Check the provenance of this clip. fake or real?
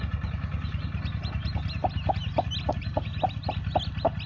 real